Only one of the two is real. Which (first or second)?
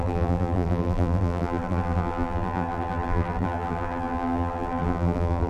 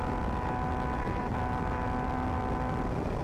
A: second